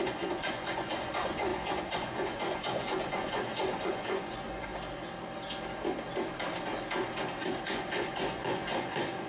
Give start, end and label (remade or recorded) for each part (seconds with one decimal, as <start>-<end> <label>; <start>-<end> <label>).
0.0-4.7 remade; 4.7-7.6 recorded; 7.6-9.3 remade